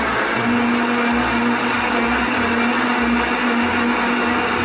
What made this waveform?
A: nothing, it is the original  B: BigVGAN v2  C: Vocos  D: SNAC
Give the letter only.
A